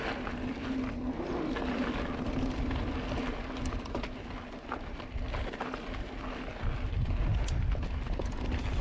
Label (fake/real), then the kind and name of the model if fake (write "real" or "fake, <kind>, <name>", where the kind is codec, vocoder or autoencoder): real